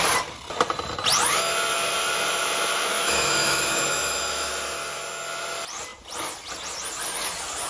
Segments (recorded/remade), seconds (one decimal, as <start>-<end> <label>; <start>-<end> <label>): 0.0-2.9 recorded; 2.9-4.5 remade; 4.5-7.7 recorded